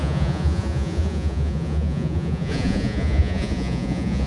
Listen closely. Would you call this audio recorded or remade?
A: remade